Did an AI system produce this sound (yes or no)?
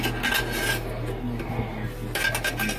no